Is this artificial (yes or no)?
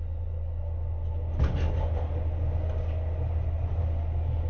no